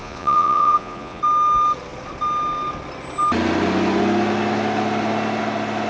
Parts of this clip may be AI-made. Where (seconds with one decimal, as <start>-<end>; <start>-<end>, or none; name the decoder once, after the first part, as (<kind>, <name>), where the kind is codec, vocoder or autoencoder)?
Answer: 0.0-1.2 (vocoder, Vocos)